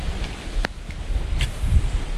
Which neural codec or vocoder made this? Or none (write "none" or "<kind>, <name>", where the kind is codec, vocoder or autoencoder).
none